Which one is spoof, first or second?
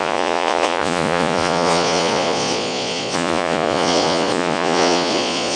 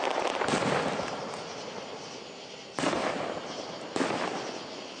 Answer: first